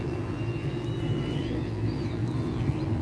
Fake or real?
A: fake